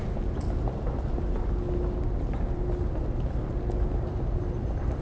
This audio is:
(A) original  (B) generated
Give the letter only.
A